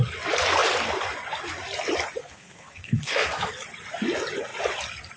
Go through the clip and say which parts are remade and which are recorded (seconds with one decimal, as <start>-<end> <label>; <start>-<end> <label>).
0.0-2.2 recorded; 2.2-3.5 remade; 3.5-5.2 recorded